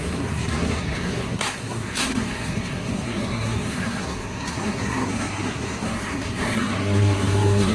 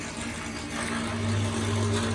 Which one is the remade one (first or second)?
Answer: first